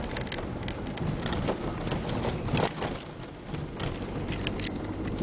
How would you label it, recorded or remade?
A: recorded